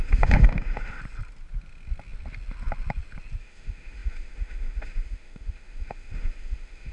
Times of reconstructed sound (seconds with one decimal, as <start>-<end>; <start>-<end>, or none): 0.0-1.0; 3.4-6.9